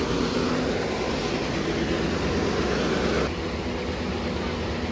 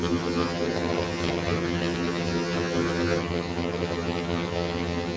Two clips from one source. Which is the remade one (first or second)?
second